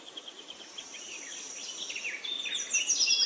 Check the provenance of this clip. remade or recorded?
recorded